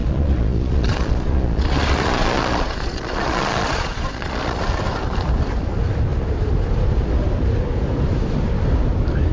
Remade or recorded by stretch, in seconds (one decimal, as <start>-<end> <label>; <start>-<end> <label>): 0.0-4.6 remade; 4.6-9.3 recorded